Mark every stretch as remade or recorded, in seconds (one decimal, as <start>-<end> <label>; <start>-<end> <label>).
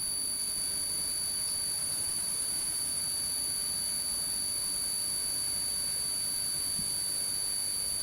0.0-1.8 recorded; 1.8-3.0 remade; 3.0-8.0 recorded